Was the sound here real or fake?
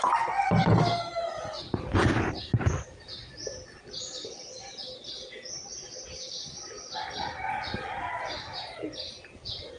real